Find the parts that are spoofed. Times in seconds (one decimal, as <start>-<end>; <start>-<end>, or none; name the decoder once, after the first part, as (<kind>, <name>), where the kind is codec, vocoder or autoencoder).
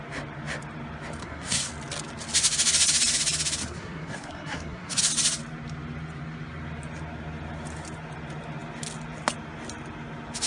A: 1.2-1.7 (codec, SNAC); 3.6-5.0